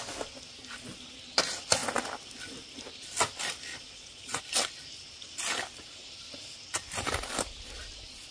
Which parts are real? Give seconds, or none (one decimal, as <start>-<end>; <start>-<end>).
0.0-3.7; 4.4-8.3